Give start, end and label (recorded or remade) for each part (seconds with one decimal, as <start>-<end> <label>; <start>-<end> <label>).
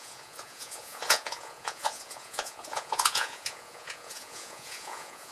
0.0-5.3 remade